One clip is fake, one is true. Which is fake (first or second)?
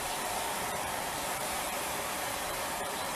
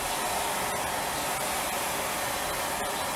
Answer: first